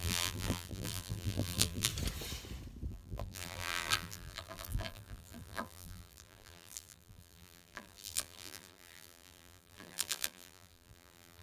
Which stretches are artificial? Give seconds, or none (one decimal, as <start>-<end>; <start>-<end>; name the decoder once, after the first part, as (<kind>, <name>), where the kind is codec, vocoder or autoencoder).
0.0-1.9 (vocoder, BigVGAN v2); 2.9-11.4